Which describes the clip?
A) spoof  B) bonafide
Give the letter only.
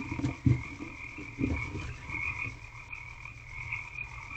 B